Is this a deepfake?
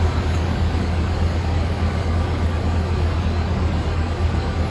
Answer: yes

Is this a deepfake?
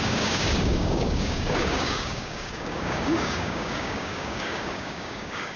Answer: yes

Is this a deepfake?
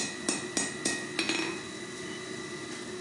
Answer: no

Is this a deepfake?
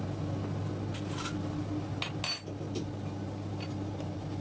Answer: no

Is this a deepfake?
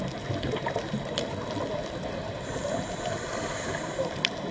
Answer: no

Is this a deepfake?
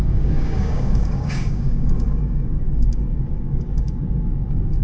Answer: yes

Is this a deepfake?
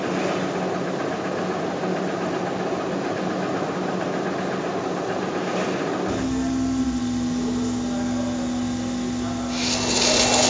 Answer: no